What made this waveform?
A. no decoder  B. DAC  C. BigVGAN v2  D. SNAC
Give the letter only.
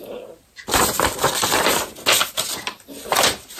A